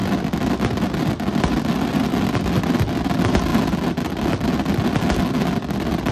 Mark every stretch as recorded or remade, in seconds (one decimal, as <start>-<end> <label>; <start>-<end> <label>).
0.0-6.1 recorded